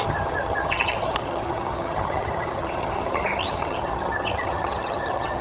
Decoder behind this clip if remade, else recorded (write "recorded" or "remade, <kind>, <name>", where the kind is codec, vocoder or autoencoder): remade, vocoder, HiFi-GAN